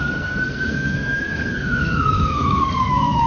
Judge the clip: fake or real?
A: fake